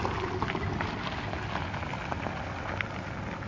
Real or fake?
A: real